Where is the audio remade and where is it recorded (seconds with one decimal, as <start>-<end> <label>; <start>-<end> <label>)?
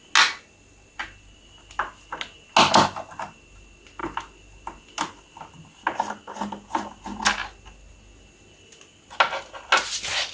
0.0-10.3 recorded